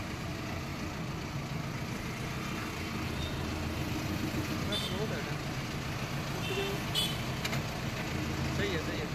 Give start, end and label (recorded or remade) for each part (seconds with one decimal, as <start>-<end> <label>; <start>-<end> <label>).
0.0-9.1 recorded